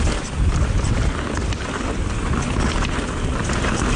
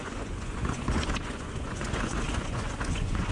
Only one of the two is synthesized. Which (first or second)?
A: second